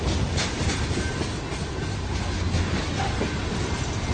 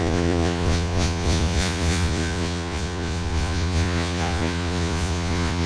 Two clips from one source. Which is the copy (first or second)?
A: second